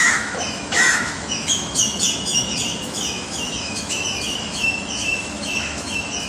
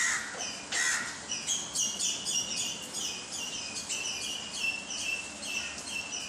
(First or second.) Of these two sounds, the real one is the second